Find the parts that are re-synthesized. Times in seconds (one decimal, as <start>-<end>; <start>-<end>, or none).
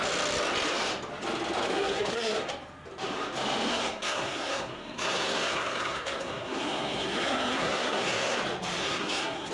1.7-2.5; 3.7-8.4; 8.8-9.5